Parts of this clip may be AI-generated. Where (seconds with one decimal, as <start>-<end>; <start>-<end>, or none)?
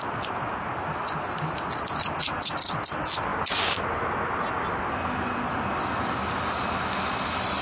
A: none